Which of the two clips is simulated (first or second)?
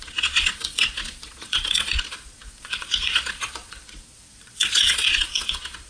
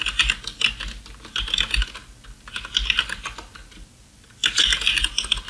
first